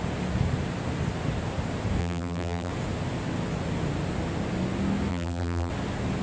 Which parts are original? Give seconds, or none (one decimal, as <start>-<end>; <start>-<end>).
0.0-2.0; 2.7-5.1; 5.7-6.2